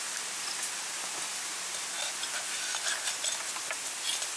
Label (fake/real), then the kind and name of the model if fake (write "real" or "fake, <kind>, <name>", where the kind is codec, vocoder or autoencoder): real